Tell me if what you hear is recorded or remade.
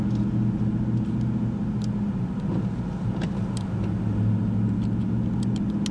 recorded